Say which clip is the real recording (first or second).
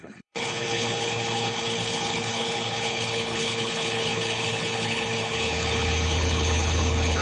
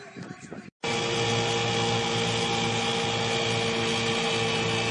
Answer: second